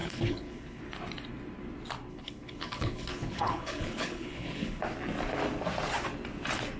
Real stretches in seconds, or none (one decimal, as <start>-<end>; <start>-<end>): 0.8-2.1; 4.8-6.8